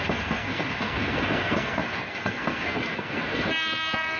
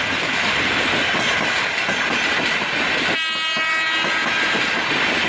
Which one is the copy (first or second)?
first